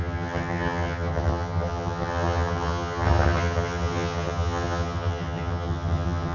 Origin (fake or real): fake